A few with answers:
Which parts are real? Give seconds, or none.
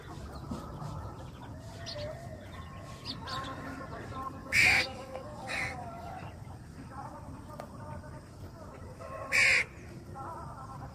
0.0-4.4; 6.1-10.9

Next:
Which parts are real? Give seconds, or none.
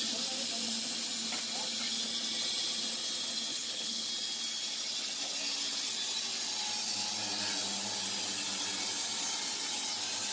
0.0-3.5; 4.1-10.3